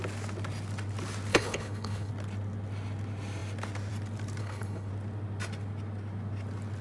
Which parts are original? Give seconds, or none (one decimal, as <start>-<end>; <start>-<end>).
0.0-1.3; 2.1-4.4; 4.9-6.8